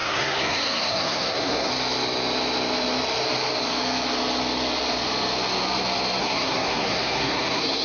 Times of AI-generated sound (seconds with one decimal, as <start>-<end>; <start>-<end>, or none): 0.0-1.7; 6.2-7.8